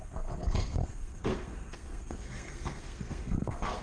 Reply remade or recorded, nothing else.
remade